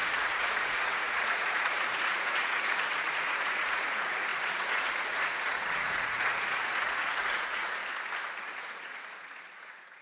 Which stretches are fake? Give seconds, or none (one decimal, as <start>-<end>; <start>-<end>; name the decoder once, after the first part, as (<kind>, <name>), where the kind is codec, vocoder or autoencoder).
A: 0.0-7.8 (vocoder, Vocos); 8.4-10.0